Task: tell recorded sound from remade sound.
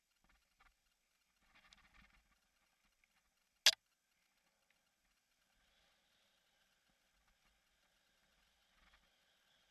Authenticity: recorded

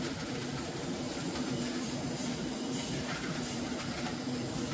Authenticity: remade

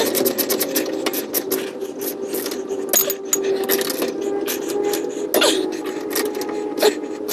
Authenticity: recorded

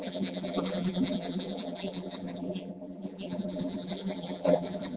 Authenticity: remade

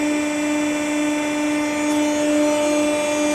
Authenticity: recorded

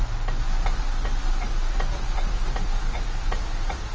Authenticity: remade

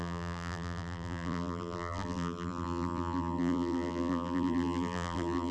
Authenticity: remade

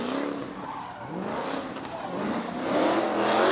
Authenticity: recorded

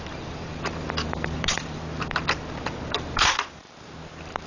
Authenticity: remade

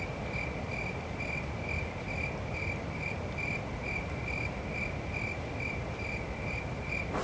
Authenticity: remade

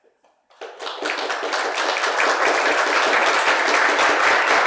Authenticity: recorded